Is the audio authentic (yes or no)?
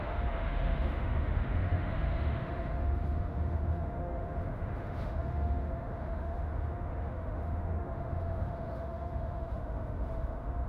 no